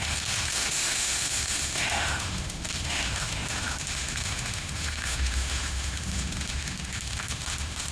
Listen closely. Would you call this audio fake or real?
fake